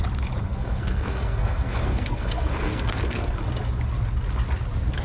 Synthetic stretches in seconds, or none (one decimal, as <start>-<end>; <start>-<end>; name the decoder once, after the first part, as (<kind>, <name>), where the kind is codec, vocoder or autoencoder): 0.4-3.4 (codec, SNAC)